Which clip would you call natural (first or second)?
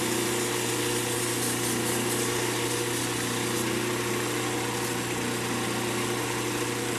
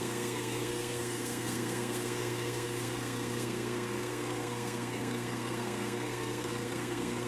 first